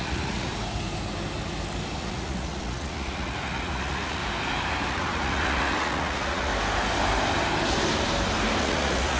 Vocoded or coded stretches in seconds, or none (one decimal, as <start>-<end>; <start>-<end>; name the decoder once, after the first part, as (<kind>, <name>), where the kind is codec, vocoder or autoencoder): 0.0-0.5 (vocoder, Vocos); 2.0-4.2; 4.9-6.5; 8.6-9.2